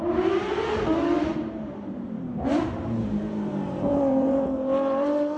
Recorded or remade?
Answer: remade